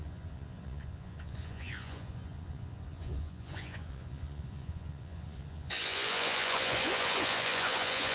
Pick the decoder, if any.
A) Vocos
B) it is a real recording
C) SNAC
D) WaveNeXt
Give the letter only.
A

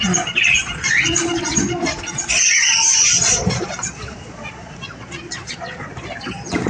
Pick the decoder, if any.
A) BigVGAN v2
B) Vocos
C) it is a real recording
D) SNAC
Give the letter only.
B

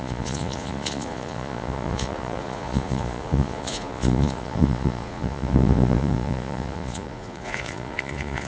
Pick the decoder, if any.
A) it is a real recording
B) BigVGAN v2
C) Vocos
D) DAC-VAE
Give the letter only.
C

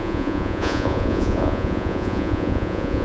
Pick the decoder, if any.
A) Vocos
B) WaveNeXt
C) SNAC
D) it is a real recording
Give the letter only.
A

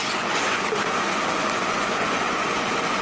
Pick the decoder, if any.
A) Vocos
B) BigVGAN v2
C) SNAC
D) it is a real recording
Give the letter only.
A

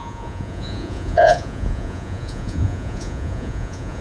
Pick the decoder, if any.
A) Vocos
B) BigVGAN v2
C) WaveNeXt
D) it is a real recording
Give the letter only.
A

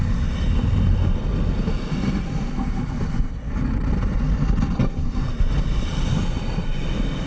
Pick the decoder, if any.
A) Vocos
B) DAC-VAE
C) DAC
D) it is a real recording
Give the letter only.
D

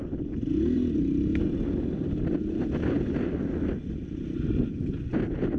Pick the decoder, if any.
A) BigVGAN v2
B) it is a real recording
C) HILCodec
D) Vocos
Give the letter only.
B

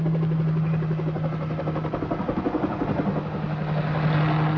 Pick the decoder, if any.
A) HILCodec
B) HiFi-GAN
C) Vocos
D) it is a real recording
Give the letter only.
D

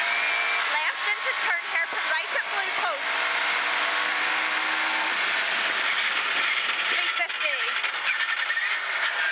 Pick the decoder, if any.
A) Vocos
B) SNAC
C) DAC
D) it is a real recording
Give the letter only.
D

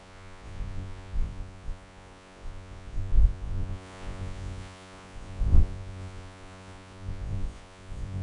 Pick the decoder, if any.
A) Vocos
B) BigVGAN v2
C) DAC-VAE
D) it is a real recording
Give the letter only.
A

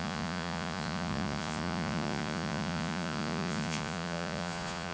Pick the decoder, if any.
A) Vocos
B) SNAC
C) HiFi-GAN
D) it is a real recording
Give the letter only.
A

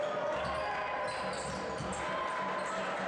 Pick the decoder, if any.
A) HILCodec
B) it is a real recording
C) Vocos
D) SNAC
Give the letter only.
B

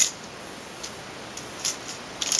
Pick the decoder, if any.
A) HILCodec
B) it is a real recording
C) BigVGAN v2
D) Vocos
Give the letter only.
B